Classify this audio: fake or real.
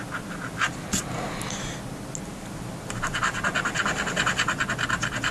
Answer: real